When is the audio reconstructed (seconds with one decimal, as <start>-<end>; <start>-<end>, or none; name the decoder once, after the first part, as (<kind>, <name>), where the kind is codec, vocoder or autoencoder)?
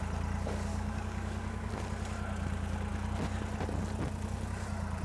0.7-1.7 (codec, DAC)